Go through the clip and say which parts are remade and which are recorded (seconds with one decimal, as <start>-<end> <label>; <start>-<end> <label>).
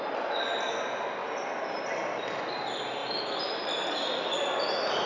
0.0-1.2 recorded; 1.2-2.4 remade; 2.4-3.0 recorded; 3.0-4.0 remade; 4.0-5.1 recorded